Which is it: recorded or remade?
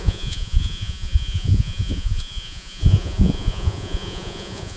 remade